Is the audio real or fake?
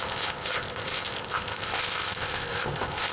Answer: fake